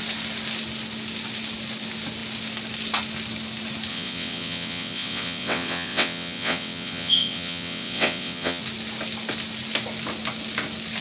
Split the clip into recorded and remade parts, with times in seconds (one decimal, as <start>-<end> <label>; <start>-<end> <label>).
0.0-3.9 recorded; 3.9-8.6 remade; 8.6-11.0 recorded